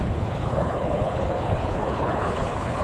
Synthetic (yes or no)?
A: yes